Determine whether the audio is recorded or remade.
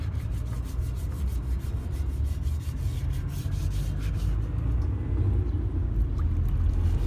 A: recorded